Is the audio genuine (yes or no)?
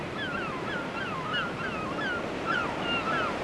yes